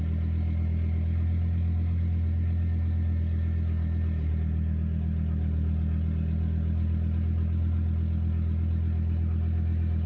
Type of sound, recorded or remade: recorded